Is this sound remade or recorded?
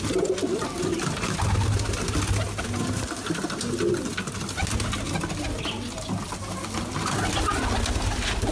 recorded